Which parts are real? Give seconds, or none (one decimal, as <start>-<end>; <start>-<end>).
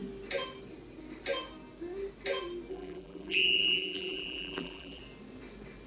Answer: 0.0-2.7; 5.0-5.9